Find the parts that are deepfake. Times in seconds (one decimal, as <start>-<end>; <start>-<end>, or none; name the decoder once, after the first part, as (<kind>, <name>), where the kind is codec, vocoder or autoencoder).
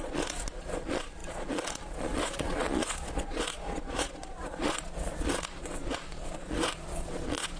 0.0-7.6 (vocoder, Vocos)